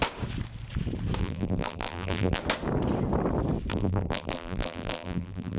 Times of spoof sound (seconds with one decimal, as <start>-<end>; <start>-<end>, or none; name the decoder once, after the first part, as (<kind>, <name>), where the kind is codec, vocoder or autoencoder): 1.2-2.4 (vocoder, BigVGAN v2); 3.7-5.6